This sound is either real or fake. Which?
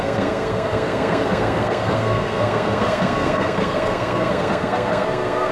fake